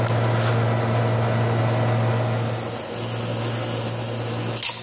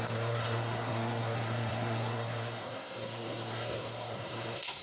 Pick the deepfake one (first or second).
second